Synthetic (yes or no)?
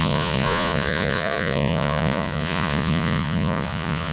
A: yes